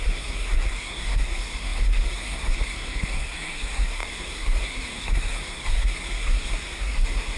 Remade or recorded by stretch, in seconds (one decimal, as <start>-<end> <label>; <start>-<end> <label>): 0.0-7.4 remade